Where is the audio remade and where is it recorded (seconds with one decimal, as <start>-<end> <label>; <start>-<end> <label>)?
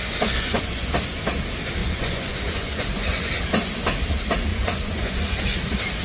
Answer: 0.0-0.9 remade; 0.9-1.8 recorded; 1.8-3.3 remade; 3.3-4.5 recorded; 4.5-5.6 remade; 5.6-6.0 recorded